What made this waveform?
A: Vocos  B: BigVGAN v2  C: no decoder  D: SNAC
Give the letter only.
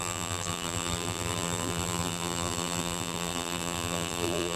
B